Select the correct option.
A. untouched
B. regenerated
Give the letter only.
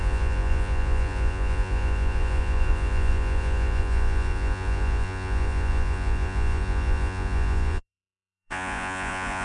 B